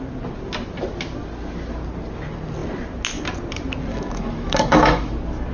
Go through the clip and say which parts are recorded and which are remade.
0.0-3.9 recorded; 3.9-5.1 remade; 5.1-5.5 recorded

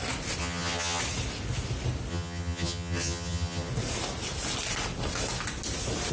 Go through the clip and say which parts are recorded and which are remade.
0.0-0.4 recorded; 0.4-1.0 remade; 1.0-2.1 recorded; 2.1-3.7 remade; 3.7-6.1 recorded

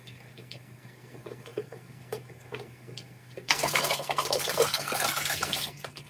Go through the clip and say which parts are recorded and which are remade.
0.0-6.1 remade